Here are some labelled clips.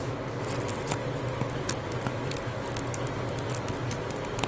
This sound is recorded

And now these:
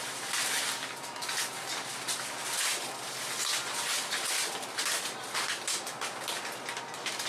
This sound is recorded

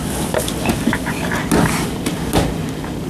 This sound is recorded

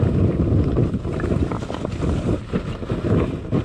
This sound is recorded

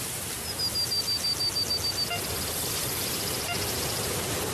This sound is recorded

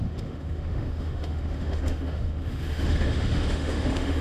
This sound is remade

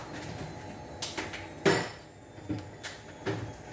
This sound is recorded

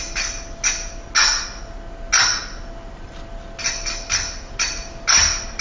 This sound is recorded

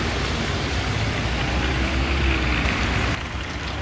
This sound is recorded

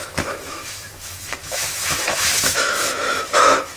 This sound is remade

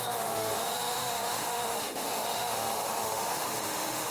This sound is remade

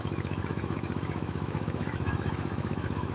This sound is remade